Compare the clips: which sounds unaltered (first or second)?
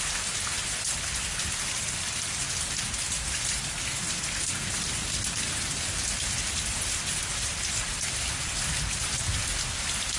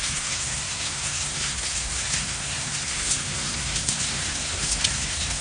first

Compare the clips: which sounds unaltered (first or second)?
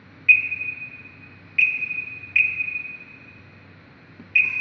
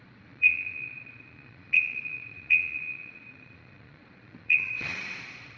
first